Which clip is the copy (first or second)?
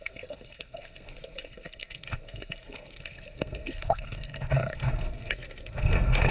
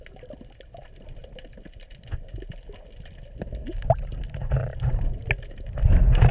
first